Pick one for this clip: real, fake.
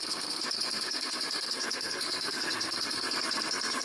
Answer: fake